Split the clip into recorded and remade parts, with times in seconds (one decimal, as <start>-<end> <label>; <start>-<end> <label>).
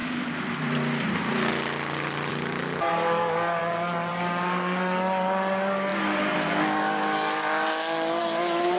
0.0-2.3 recorded; 2.3-8.8 remade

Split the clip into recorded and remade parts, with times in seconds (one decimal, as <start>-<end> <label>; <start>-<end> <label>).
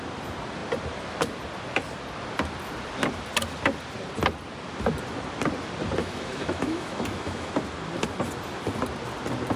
0.0-6.0 recorded; 6.0-7.5 remade; 7.5-9.6 recorded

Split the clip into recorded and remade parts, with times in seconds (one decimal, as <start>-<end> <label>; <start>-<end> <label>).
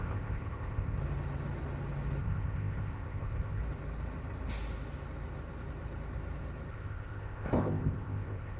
0.0-1.0 remade; 1.0-2.2 recorded; 2.2-3.6 remade; 3.6-6.7 recorded; 6.7-8.6 remade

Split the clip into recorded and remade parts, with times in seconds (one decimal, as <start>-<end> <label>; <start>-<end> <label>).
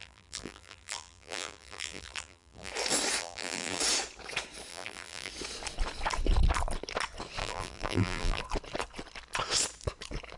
0.0-2.7 remade; 2.7-3.2 recorded; 3.2-3.8 remade; 3.8-4.7 recorded; 4.7-5.3 remade; 5.3-7.4 recorded; 7.4-8.4 remade; 8.4-10.4 recorded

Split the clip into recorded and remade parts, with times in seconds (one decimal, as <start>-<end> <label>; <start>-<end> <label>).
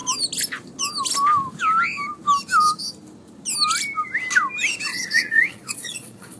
0.0-4.9 recorded; 4.9-6.4 remade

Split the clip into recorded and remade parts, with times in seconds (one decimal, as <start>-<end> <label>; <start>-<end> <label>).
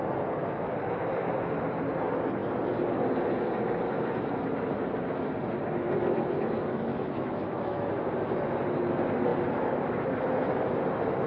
0.0-6.9 recorded; 6.9-8.0 remade; 8.0-11.3 recorded